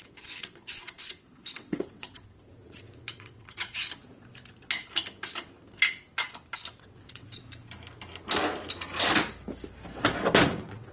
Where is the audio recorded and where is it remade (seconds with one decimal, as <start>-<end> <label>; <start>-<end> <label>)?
0.0-3.8 remade; 3.8-6.7 recorded; 6.7-7.4 remade; 7.4-10.5 recorded; 10.5-10.9 remade